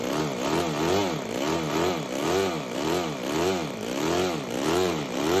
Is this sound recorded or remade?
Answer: recorded